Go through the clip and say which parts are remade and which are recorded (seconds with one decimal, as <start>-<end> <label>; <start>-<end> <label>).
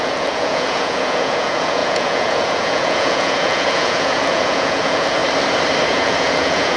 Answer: 0.0-5.2 remade; 5.2-5.9 recorded; 5.9-6.8 remade